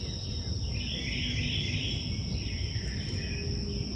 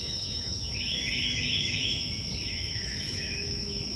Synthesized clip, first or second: second